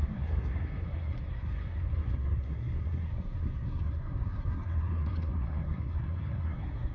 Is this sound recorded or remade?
remade